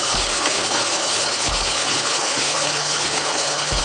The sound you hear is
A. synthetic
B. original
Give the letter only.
A